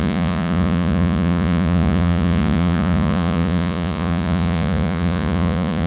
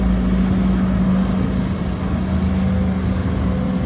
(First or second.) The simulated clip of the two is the first